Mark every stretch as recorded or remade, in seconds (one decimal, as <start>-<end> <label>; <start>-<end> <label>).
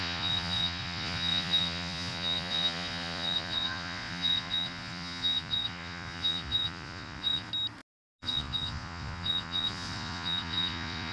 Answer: 0.0-7.5 remade; 7.5-8.2 recorded; 8.2-11.1 remade